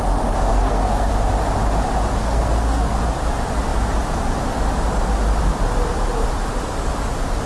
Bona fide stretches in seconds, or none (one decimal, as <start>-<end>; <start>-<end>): 0.0-0.5; 1.1-2.2; 3.0-7.5